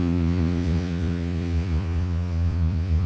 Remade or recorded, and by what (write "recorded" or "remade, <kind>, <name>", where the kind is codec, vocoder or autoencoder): remade, vocoder, Vocos